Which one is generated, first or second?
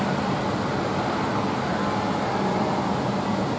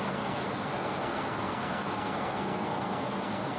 second